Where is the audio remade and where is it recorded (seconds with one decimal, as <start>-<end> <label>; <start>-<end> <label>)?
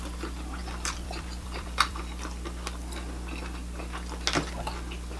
0.0-0.6 recorded; 0.6-2.0 remade; 2.0-5.2 recorded